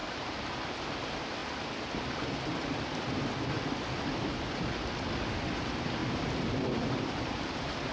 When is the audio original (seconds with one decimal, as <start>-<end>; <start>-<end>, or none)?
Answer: 0.8-1.4; 3.3-7.9